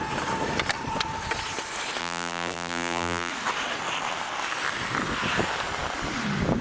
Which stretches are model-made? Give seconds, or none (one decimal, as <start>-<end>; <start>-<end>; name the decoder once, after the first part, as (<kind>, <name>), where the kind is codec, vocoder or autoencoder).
2.0-3.3 (vocoder, BigVGAN v2)